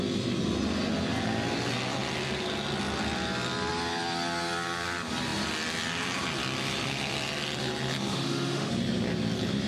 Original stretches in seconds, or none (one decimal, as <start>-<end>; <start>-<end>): 0.0-8.1; 8.7-9.7